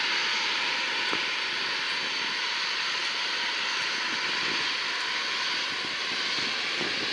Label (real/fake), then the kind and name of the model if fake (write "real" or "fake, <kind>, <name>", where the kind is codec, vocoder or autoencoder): real